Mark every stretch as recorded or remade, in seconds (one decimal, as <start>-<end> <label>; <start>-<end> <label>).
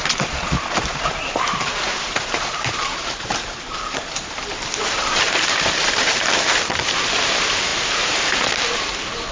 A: 0.0-9.3 remade